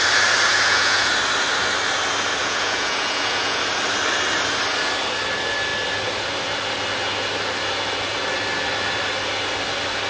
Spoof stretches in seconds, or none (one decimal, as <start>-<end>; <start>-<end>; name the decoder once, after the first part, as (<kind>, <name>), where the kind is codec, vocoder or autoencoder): 0.5-1.1 (vocoder, Vocos); 2.4-3.6